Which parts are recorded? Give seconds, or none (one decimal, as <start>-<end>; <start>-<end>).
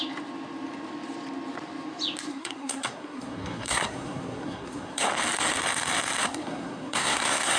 0.0-2.3; 5.1-6.2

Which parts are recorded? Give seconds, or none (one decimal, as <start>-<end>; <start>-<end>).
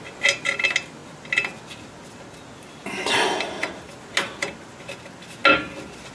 0.0-6.1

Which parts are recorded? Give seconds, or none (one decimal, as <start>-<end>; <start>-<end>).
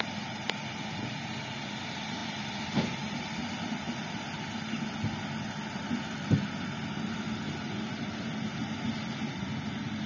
0.0-10.1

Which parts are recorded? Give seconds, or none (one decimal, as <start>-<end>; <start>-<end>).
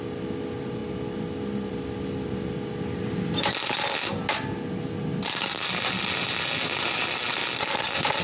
0.0-8.2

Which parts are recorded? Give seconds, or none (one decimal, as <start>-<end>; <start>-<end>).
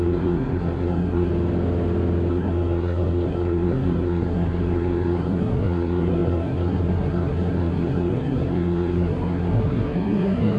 1.3-2.3